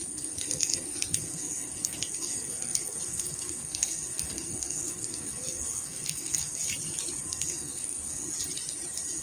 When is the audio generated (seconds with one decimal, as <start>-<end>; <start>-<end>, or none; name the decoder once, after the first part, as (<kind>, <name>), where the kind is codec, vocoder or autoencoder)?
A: 0.0-6.6 (codec, SNAC); 7.2-8.2